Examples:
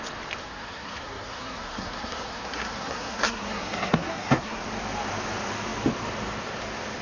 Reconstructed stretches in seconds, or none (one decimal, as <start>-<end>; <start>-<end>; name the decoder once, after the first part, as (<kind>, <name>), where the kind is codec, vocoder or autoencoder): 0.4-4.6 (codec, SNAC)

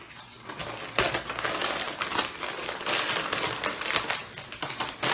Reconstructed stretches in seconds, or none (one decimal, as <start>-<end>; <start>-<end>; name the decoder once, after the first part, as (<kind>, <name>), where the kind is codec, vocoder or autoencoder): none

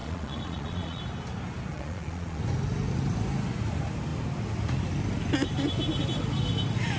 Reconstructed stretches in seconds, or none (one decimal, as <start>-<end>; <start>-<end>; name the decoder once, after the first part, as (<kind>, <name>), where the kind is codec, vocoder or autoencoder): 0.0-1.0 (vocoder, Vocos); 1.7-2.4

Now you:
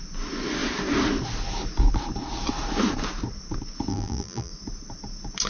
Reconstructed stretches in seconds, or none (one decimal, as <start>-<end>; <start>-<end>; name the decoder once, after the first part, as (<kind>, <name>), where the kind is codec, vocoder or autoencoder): 3.9-4.5 (vocoder, BigVGAN v2)

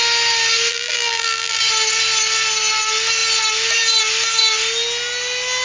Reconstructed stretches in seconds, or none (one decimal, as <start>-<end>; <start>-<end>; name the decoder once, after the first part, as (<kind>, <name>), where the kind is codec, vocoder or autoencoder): 0.7-1.6 (vocoder, BigVGAN v2)

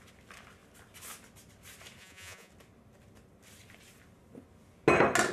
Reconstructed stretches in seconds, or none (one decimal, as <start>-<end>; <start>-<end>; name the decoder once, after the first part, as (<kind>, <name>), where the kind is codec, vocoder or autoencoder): 2.0-2.5 (vocoder, Vocos)

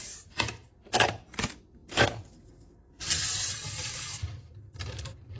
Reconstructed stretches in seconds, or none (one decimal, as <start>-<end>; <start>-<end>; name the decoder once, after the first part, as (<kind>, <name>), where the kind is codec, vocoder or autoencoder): none